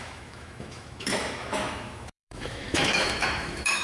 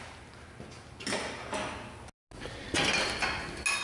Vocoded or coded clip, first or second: first